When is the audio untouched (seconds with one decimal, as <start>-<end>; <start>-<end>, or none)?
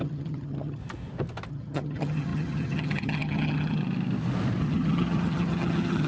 0.8-1.5; 3.8-4.6